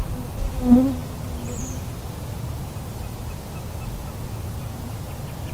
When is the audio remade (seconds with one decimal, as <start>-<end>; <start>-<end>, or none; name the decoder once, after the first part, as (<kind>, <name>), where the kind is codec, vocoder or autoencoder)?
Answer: none